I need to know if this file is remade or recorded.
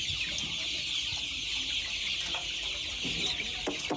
recorded